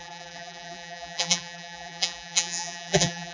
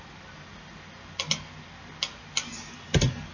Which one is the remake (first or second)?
first